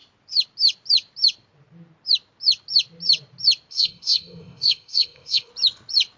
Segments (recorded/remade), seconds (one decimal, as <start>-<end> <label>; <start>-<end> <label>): 0.0-3.7 recorded; 3.7-5.5 remade; 5.5-6.2 recorded